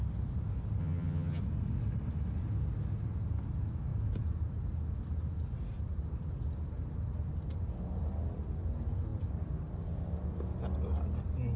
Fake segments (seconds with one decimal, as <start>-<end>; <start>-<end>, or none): 0.8-1.4